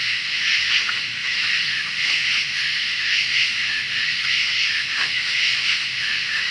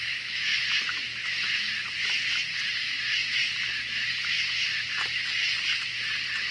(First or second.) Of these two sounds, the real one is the second